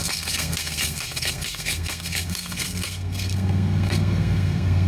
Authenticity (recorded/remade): remade